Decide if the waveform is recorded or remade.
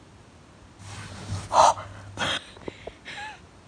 recorded